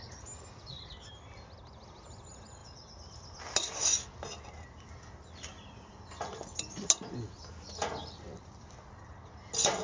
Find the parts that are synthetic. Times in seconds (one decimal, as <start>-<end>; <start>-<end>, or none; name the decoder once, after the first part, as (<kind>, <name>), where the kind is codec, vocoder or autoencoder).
none